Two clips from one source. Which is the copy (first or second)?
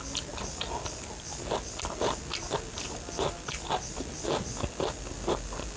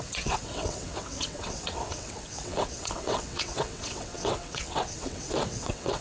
second